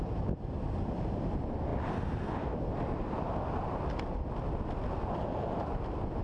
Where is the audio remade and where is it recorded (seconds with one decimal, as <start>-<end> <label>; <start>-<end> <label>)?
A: 0.0-6.2 recorded